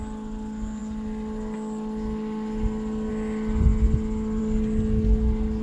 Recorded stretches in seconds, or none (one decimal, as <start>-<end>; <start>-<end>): 0.0-5.6